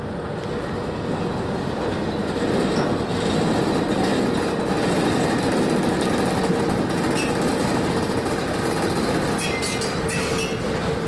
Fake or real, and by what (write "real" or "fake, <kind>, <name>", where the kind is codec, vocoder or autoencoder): real